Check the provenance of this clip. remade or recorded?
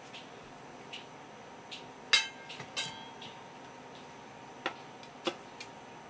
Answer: recorded